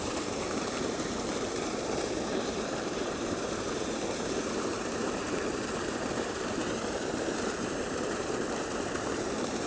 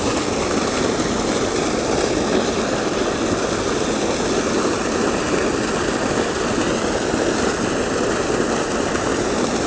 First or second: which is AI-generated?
first